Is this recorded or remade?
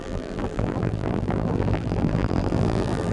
remade